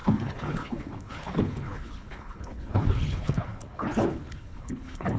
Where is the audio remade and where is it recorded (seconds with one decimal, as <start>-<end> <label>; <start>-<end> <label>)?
0.0-5.2 remade